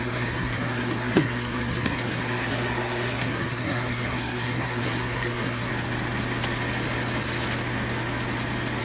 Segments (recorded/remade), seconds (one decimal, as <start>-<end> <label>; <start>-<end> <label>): 0.0-5.7 remade; 5.7-8.8 recorded